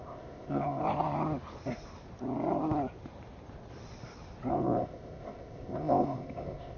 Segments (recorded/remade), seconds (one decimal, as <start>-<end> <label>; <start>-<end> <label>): 0.0-0.8 remade; 0.8-4.5 recorded; 4.5-6.8 remade